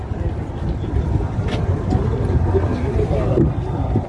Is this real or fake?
real